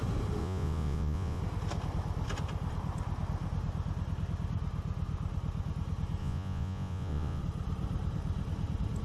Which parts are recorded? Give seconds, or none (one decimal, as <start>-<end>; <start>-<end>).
0.0-0.4; 1.4-6.2; 7.4-9.0